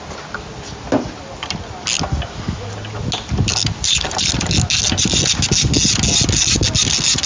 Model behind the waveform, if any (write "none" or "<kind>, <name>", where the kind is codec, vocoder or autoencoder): none